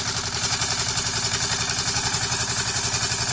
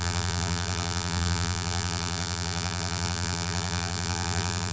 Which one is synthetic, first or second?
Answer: second